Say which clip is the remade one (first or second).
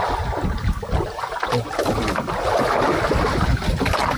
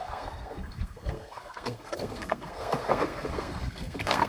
second